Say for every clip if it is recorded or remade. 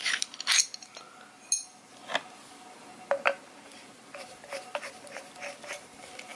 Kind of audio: recorded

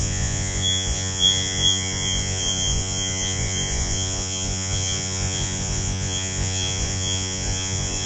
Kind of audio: remade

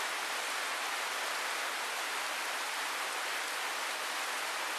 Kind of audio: recorded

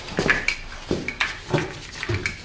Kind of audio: recorded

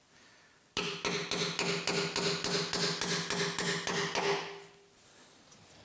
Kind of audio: recorded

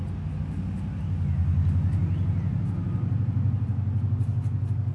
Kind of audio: recorded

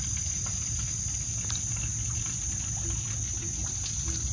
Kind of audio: recorded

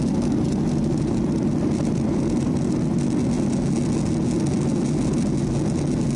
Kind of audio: recorded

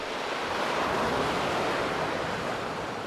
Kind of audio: recorded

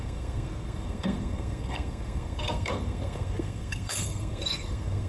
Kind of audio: remade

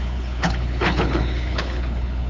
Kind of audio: remade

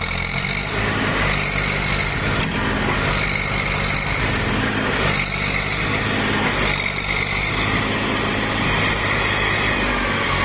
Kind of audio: recorded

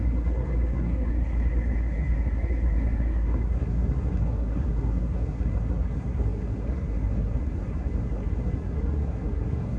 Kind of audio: remade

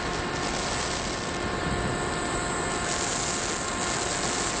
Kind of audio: recorded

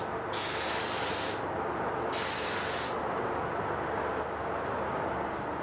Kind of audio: recorded